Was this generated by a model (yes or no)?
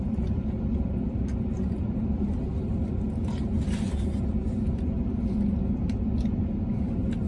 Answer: no